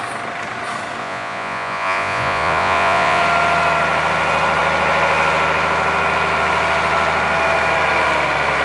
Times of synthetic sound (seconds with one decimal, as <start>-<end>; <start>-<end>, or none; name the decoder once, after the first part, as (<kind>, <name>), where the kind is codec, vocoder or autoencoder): 1.0-3.2 (vocoder, Vocos)

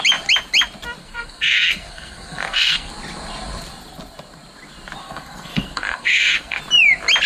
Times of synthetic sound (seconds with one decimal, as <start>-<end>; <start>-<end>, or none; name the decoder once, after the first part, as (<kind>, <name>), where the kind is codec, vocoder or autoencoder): 1.0-2.9 (codec, SNAC); 5.0-6.6

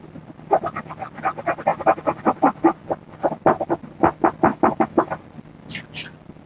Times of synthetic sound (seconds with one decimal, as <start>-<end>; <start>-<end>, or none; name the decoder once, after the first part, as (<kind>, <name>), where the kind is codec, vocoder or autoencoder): 4.5-5.1 (autoencoder, DAC-VAE)

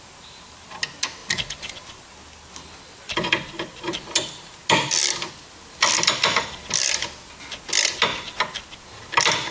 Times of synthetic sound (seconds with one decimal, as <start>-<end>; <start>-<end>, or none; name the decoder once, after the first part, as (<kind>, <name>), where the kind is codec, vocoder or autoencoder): none

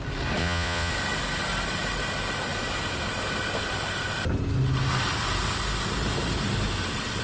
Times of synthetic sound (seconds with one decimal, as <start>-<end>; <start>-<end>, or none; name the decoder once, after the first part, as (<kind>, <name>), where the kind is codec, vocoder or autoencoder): 0.4-0.9 (vocoder, Vocos)